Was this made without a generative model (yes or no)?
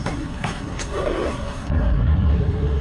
no